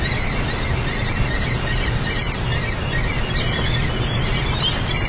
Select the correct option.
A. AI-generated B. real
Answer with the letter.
B